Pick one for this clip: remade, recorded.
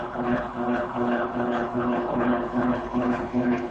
remade